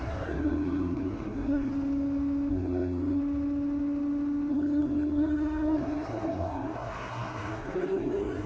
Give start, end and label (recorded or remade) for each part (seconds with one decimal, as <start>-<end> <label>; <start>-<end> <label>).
0.0-1.7 remade; 1.7-2.5 recorded; 2.5-3.2 remade; 3.2-4.5 recorded; 4.5-8.5 remade